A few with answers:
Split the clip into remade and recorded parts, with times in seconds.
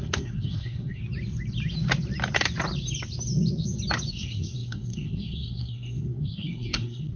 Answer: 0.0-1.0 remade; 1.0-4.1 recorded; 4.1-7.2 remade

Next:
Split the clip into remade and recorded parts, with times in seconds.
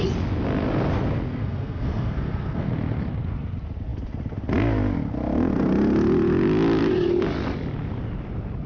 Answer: 0.0-1.3 recorded; 1.3-2.7 remade; 2.7-8.7 recorded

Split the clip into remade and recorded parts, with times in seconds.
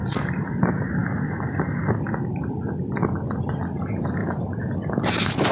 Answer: 0.0-4.2 recorded; 4.2-4.7 remade; 4.7-5.5 recorded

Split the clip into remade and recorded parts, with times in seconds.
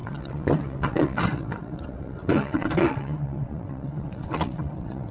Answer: 0.0-5.1 remade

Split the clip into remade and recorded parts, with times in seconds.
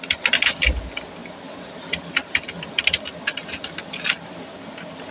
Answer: 0.0-5.1 recorded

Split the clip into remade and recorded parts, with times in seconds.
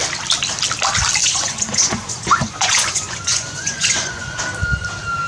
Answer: 0.0-1.2 recorded; 1.2-4.4 remade; 4.4-5.3 recorded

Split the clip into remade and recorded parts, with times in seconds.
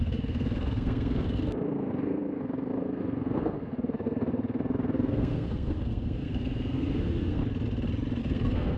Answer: 0.0-7.4 remade; 7.4-8.2 recorded; 8.2-8.8 remade